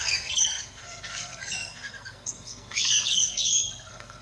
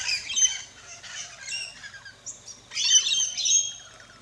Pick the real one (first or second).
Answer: second